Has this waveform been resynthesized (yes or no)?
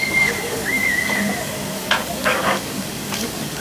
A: yes